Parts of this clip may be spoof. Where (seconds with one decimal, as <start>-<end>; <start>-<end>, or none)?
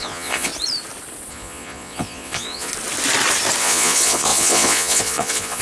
0.0-0.5; 1.3-2.7; 3.6-5.6